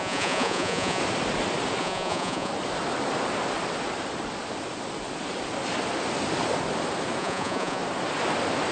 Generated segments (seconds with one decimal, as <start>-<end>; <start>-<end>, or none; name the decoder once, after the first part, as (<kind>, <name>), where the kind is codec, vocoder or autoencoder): 0.0-1.0 (vocoder, Vocos); 1.8-2.5; 7.2-7.8